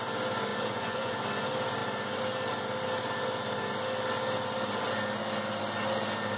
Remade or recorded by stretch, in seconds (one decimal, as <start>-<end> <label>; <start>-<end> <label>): 0.0-0.5 recorded; 0.5-1.1 remade; 1.1-6.4 recorded